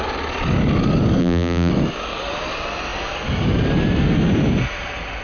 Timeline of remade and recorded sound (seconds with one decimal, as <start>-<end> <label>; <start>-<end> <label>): 0.0-1.2 recorded; 1.2-1.7 remade; 1.7-5.2 recorded